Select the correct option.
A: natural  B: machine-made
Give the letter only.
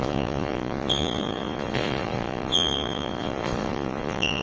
B